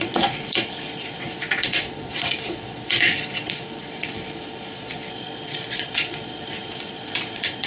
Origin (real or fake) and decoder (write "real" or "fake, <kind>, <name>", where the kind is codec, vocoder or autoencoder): fake, vocoder, Vocos